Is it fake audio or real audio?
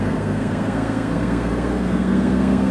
fake